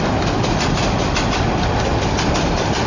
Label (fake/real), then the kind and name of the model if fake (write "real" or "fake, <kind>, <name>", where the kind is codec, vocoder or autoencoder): real